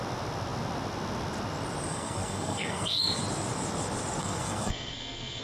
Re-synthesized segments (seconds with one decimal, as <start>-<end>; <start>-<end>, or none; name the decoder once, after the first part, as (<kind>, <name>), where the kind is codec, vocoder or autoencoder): 1.9-3.2 (codec, SNAC); 4.2-5.4